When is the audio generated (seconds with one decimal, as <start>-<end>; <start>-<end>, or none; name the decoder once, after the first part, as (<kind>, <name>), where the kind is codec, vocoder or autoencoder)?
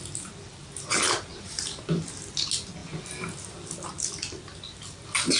1.3-1.8 (vocoder, BigVGAN v2)